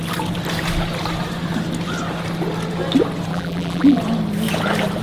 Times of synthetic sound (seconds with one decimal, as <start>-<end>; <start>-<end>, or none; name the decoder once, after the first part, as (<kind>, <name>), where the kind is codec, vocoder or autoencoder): 3.3-4.0 (vocoder, BigVGAN v2)